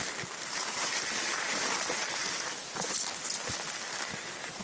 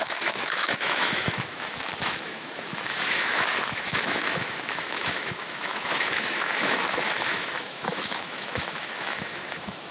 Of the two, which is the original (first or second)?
first